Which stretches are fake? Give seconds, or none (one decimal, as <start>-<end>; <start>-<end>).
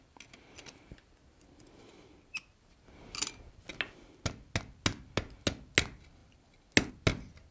none